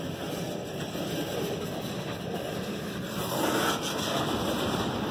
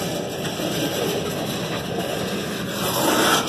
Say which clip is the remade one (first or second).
first